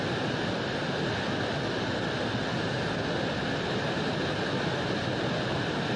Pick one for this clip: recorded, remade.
recorded